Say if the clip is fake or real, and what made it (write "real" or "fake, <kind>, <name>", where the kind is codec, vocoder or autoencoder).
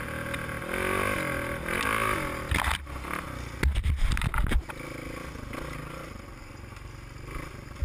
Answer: real